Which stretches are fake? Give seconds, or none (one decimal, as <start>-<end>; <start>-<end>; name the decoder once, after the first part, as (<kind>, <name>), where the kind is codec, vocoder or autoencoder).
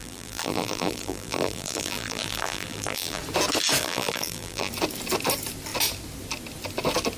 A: 0.0-3.2 (vocoder, BigVGAN v2); 3.8-4.7